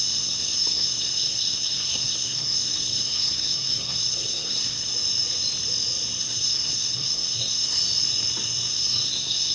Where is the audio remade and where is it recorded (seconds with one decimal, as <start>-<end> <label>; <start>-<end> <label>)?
0.0-4.9 remade; 4.9-6.2 recorded; 6.2-7.8 remade; 7.8-8.7 recorded; 8.7-9.5 remade